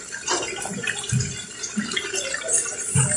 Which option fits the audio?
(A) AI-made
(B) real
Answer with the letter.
B